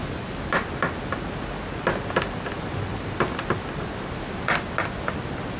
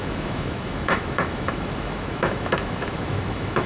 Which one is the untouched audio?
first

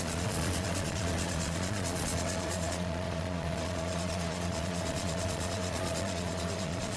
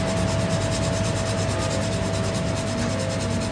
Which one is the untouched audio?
second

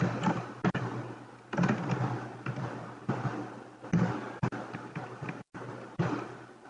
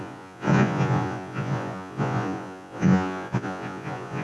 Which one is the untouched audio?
first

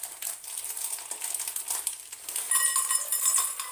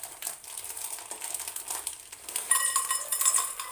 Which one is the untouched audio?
first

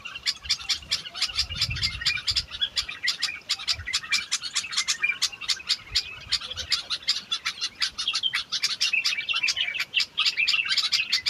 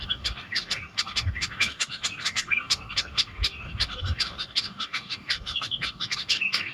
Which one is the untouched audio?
first